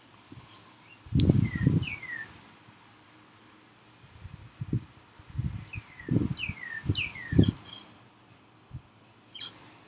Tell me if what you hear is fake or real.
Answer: real